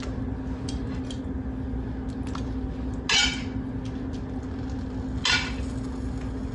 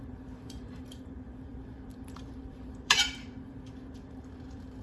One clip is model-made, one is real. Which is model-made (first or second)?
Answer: second